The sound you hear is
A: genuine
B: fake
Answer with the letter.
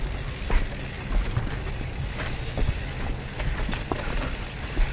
A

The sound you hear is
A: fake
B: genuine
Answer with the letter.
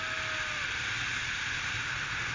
B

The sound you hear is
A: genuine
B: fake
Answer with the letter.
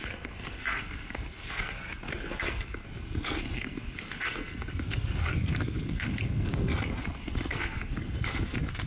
B